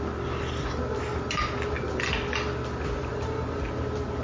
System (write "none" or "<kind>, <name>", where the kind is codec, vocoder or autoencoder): none